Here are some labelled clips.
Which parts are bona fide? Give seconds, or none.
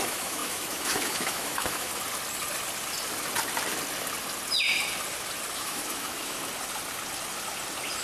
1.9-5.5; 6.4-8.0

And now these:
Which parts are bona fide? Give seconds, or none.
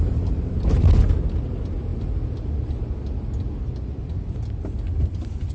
0.0-5.5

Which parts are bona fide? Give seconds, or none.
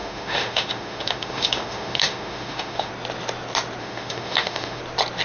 2.9-3.8; 4.8-5.2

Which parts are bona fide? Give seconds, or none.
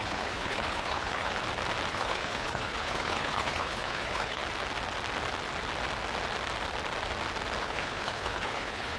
1.3-1.9; 4.4-7.6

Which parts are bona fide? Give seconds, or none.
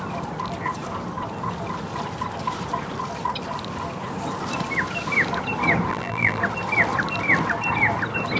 0.0-5.9; 6.4-8.4